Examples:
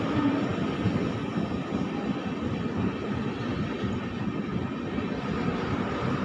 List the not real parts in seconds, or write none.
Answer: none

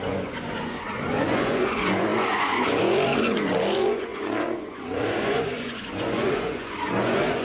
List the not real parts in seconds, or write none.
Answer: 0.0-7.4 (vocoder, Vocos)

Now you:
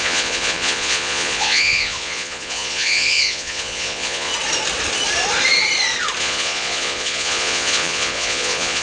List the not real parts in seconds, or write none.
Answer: 0.0-4.3 (vocoder, Vocos); 6.2-8.8

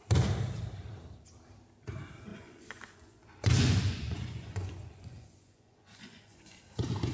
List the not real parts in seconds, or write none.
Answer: 2.3-6.6 (vocoder, Vocos)

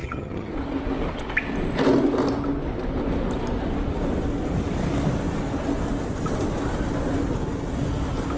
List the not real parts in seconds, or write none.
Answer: 0.0-0.5 (vocoder, HiFi-GAN)

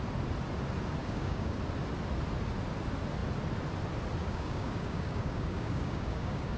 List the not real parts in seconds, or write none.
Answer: 1.0-1.6 (codec, DAC); 4.2-6.6